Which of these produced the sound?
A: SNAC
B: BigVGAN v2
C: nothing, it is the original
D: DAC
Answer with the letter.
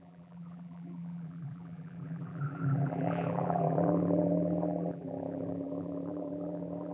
B